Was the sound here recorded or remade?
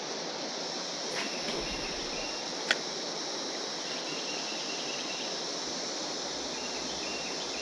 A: remade